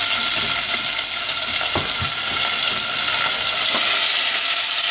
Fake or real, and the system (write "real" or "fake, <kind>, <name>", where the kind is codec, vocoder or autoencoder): real